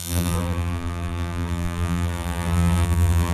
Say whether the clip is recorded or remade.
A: remade